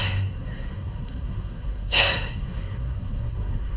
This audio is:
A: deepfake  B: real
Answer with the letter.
A